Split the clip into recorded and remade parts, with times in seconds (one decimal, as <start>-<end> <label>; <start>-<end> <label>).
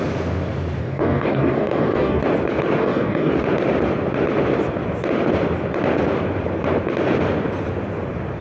0.0-0.8 recorded; 0.8-2.2 remade; 2.2-2.8 recorded; 2.8-3.3 remade; 3.3-8.4 recorded